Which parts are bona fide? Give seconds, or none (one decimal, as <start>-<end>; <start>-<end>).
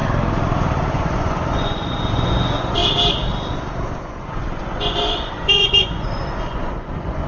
0.0-0.9; 2.8-4.0